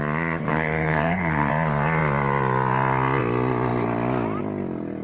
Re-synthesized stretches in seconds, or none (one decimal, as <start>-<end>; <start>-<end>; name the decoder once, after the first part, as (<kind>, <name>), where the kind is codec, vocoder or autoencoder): 0.5-1.5 (codec, SNAC)